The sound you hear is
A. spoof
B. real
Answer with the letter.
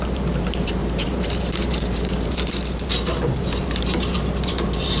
A